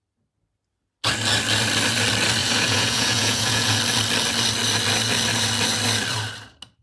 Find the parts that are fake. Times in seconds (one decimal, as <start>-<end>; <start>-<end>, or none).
2.4-3.8

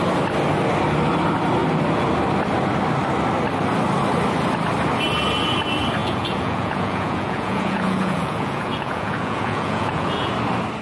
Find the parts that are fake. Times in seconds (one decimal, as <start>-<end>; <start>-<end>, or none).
6.0-10.3

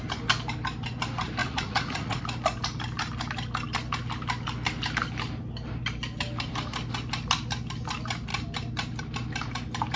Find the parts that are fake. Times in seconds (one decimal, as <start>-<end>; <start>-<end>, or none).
1.4-2.2

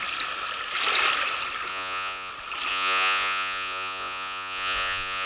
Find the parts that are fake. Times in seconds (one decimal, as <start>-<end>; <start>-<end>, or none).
1.7-2.3; 2.7-5.3

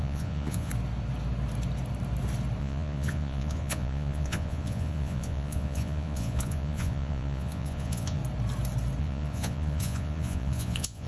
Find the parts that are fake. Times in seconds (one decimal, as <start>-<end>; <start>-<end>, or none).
0.0-0.7; 2.6-8.2; 9.0-11.1

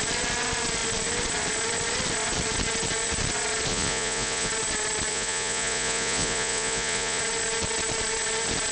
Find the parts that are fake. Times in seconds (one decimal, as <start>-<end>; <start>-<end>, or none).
3.7-4.5; 5.1-7.2

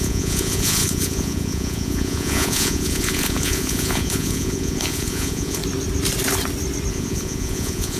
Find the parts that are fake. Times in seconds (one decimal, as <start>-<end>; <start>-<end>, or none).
0.0-5.6; 6.9-8.0